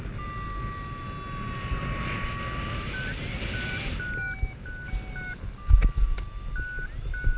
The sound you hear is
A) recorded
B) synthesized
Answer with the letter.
A